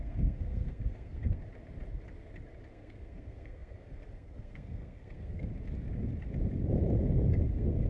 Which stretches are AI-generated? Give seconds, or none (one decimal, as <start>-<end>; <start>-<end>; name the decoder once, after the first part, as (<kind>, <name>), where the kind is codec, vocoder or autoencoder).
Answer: 0.0-1.4 (codec, SNAC); 2.7-5.5; 7.5-7.9